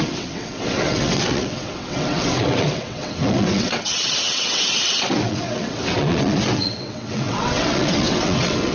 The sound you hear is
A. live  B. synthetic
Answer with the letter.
B